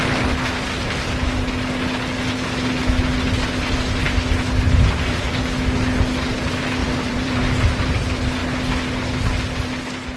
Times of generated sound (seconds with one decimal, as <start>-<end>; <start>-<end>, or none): 6.8-7.4